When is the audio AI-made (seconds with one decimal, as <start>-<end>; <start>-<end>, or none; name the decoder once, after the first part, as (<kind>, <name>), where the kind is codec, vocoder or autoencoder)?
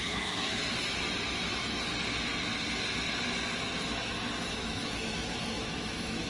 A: 0.0-0.6 (autoencoder, DAC-VAE); 4.4-6.3